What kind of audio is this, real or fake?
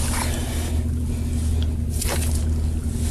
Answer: real